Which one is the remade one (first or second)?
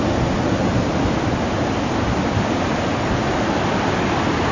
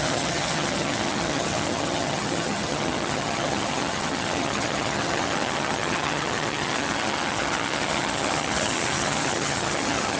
second